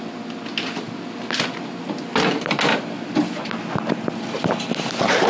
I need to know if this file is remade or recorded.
recorded